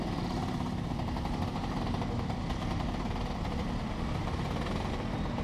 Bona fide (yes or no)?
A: yes